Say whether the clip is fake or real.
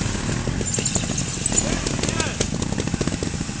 real